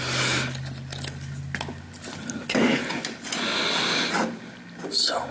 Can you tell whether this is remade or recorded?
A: recorded